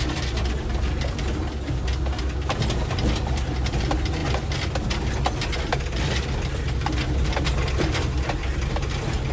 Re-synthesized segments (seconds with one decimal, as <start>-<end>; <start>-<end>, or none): none